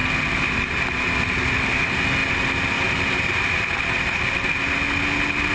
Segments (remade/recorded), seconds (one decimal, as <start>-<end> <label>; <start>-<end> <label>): 0.0-5.5 recorded